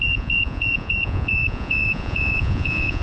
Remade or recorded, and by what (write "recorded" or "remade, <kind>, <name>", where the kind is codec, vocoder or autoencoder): remade, vocoder, Vocos